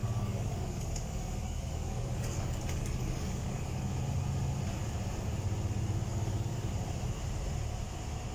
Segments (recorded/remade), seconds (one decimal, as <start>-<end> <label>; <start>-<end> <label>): 0.0-3.9 remade; 3.9-6.1 recorded; 6.1-6.7 remade; 6.7-8.3 recorded